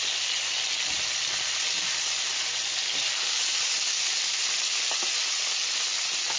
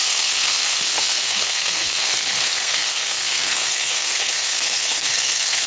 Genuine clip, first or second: first